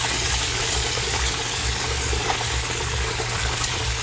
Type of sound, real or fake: fake